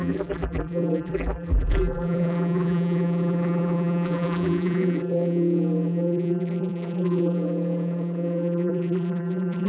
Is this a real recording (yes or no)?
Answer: no